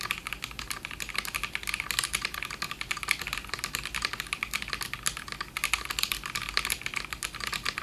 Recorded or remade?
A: recorded